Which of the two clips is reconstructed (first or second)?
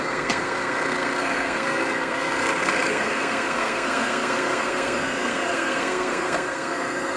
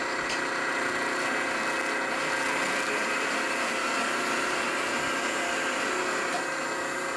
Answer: first